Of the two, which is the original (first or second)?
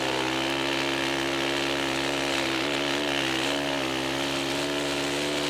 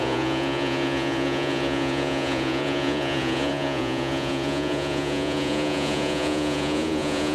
first